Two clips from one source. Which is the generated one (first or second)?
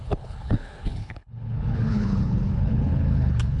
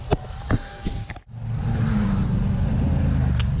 first